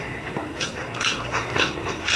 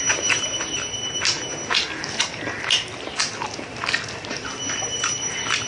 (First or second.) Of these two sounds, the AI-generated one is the first